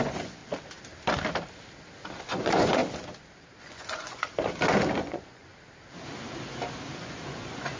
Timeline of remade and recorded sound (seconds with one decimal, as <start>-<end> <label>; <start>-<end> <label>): 0.0-0.4 remade; 0.4-2.2 recorded; 2.2-2.8 remade; 2.8-3.6 recorded; 3.6-4.3 remade; 4.3-5.0 recorded; 5.0-5.5 remade; 5.5-7.0 recorded; 7.0-7.8 remade

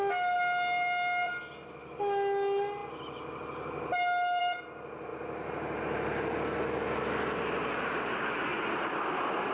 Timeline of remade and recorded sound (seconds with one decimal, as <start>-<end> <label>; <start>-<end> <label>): 0.0-9.5 recorded

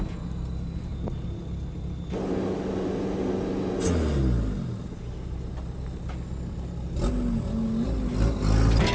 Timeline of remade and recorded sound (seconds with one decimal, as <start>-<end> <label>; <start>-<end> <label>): 0.0-8.9 recorded

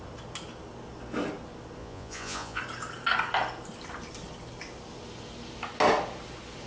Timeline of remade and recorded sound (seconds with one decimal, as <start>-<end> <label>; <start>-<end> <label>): 0.0-1.8 recorded; 1.8-2.6 remade; 2.6-6.7 recorded

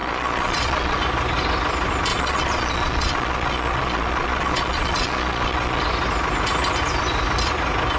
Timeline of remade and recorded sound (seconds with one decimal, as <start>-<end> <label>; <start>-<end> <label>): 0.0-1.0 remade; 1.0-2.1 recorded; 2.1-5.8 remade; 5.8-8.0 recorded